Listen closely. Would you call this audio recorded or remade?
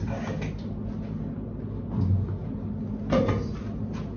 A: recorded